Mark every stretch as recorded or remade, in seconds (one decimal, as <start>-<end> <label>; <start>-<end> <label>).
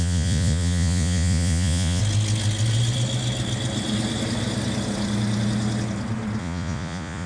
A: 0.0-2.0 remade; 2.0-6.4 recorded; 6.4-7.3 remade